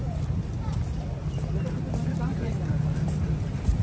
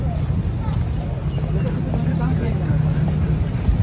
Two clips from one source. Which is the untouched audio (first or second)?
second